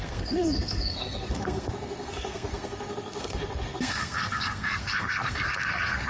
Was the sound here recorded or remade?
remade